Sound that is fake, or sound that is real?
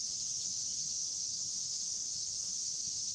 fake